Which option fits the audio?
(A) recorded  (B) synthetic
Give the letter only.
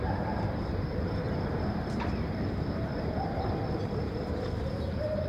B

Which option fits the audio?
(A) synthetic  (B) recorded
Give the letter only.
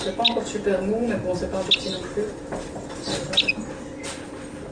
B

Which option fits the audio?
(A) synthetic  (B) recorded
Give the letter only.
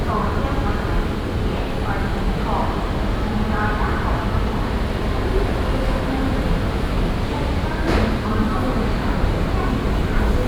B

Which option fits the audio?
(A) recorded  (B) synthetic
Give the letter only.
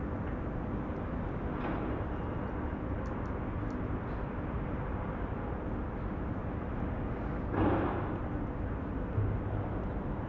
A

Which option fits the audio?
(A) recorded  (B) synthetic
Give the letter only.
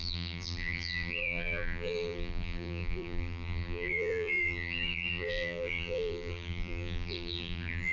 B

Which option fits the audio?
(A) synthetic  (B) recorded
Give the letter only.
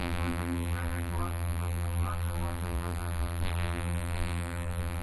A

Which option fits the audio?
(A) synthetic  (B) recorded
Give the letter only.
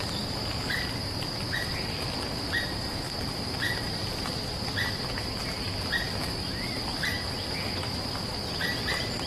A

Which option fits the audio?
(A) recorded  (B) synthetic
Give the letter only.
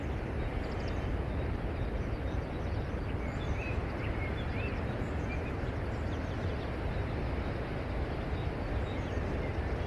A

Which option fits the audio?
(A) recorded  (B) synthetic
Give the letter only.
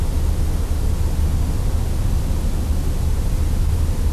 A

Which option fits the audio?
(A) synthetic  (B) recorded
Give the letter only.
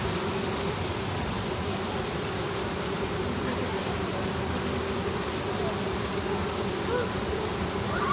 A